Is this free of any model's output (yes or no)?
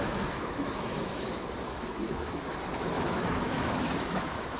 no